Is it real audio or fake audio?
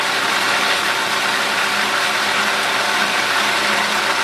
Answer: real